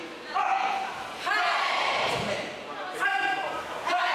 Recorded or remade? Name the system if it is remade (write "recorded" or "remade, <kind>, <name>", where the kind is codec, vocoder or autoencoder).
recorded